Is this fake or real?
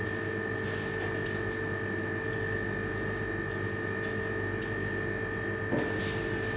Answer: real